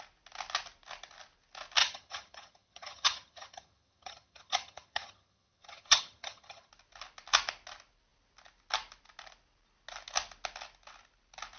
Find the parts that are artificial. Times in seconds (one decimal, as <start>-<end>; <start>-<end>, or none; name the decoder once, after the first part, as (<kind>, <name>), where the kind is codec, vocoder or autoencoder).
1.8-6.7 (vocoder, HiFi-GAN)